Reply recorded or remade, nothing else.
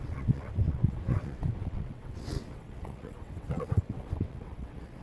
remade